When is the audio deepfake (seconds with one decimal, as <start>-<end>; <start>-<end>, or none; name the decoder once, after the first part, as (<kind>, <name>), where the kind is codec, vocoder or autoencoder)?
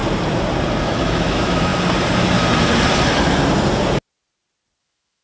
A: 0.8-1.7 (autoencoder, DAC-VAE); 4.8-5.2